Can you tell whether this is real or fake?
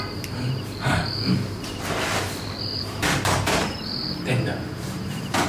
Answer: fake